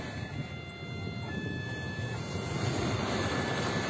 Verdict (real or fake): real